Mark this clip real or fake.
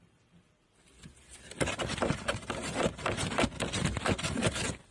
fake